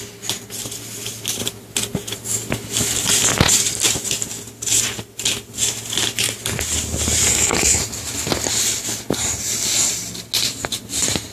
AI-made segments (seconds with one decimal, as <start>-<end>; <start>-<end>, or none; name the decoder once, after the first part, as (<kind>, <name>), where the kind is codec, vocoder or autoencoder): 7.3-7.8 (codec, SNAC)